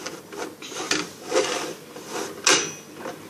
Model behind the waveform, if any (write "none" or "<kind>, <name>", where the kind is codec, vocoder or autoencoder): none